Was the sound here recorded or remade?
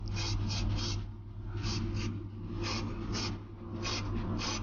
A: recorded